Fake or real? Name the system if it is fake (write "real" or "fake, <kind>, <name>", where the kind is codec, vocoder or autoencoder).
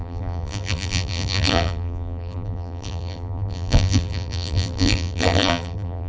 fake, vocoder, BigVGAN v2